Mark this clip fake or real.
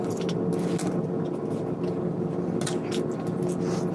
real